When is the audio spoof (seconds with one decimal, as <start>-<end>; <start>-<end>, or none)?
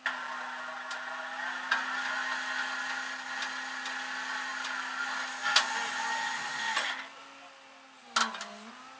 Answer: none